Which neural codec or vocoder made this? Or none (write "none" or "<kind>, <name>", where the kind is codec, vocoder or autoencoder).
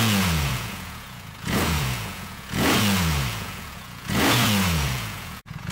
vocoder, Vocos